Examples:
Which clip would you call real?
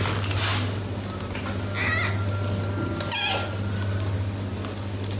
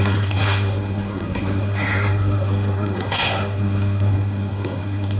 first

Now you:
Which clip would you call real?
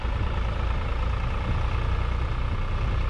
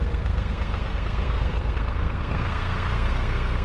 first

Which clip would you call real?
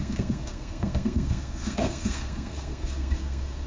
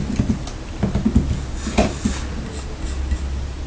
second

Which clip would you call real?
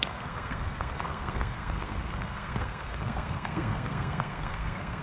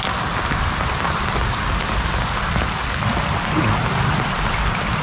second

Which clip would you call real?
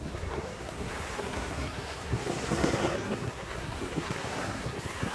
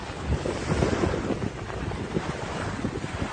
second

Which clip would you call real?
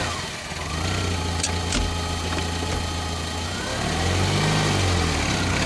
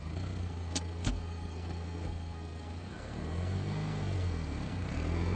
first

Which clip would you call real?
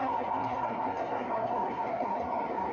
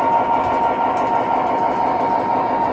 second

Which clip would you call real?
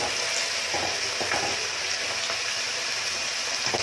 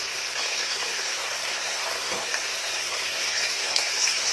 first